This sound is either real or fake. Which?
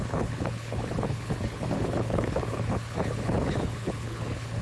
fake